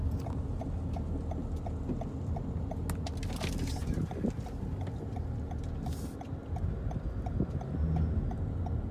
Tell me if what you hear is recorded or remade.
recorded